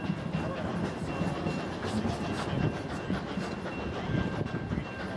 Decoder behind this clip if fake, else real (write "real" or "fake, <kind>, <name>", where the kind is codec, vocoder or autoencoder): real